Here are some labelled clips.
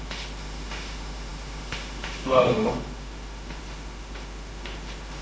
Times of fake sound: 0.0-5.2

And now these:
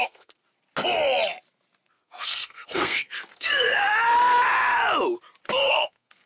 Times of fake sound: 0.0-0.4; 1.9-3.9; 5.7-6.3

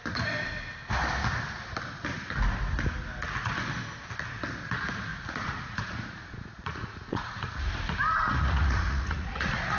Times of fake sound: 5.1-7.7; 8.1-9.8

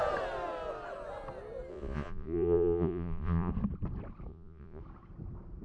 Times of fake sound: 1.7-3.5; 4.3-4.8

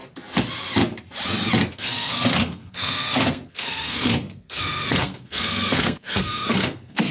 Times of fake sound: 1.7-7.1